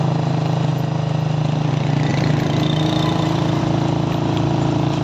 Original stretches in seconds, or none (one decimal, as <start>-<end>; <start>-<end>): 0.0-5.0